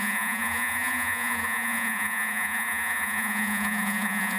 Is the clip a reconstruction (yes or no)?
yes